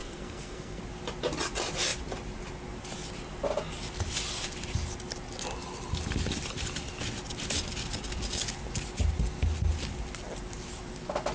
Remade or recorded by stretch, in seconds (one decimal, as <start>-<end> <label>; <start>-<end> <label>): 0.0-0.8 remade; 0.8-11.3 recorded